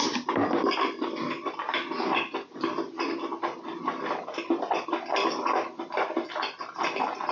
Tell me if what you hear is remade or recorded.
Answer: recorded